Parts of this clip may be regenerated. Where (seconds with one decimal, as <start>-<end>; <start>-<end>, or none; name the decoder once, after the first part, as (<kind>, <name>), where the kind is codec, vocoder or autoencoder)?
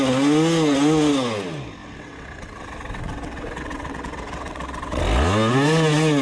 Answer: 1.8-5.0 (vocoder, WaveNeXt)